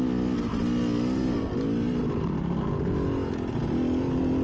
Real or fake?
real